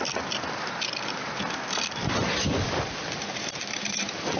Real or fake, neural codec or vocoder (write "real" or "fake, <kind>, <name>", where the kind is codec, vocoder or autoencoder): real